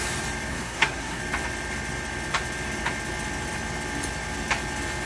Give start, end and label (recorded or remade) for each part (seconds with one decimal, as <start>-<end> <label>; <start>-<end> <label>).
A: 0.0-0.5 recorded; 0.5-1.2 remade; 1.2-5.1 recorded